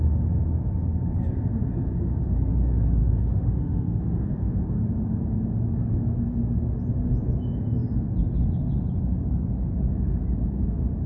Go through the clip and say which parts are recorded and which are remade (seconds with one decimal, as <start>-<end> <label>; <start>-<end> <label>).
0.0-3.0 recorded; 3.0-4.6 remade; 4.6-11.1 recorded